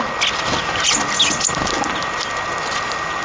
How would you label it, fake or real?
real